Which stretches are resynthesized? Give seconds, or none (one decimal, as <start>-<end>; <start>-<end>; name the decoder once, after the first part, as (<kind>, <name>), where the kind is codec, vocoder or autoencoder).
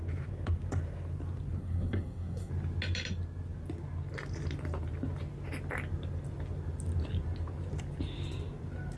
1.6-2.5 (codec, SNAC)